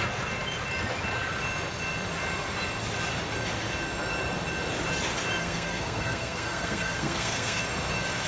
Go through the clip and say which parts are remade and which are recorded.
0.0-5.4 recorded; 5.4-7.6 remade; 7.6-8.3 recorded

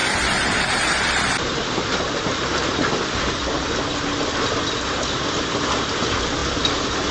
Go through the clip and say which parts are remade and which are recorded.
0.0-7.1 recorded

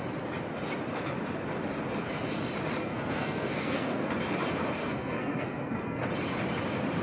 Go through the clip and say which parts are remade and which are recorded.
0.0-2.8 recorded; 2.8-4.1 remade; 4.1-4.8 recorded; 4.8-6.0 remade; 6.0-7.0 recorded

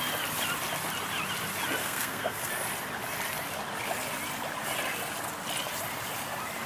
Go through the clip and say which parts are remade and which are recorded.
0.0-1.8 recorded; 1.8-2.5 remade; 2.5-6.7 recorded

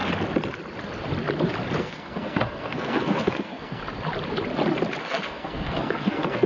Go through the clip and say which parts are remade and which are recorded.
0.0-1.8 recorded; 1.8-3.8 remade; 3.8-5.0 recorded; 5.0-6.5 remade